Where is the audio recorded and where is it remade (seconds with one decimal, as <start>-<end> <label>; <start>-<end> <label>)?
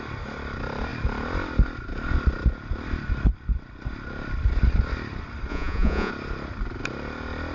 0.0-5.5 recorded; 5.5-6.1 remade; 6.1-7.5 recorded